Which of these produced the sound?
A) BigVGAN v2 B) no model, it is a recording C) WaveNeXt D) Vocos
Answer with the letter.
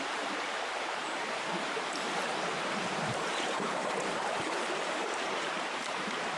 A